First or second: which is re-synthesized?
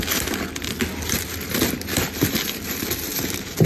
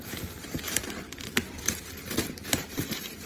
second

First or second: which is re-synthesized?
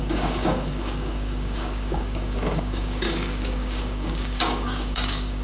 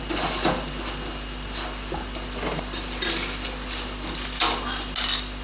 first